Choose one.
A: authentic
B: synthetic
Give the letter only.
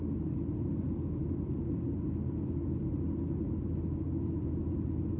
A